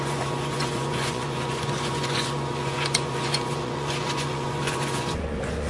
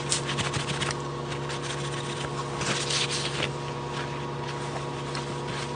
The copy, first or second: first